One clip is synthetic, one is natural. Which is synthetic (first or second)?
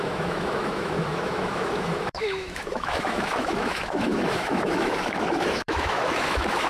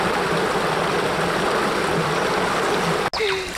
first